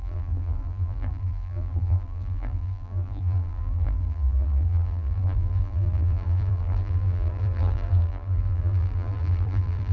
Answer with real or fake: fake